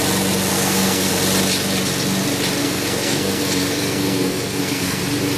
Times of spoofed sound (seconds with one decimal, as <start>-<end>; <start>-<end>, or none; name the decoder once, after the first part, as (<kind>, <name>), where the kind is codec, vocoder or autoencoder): 0.5-1.1 (codec, SNAC); 2.6-5.0